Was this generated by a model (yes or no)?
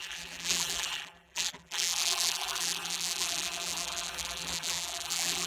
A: yes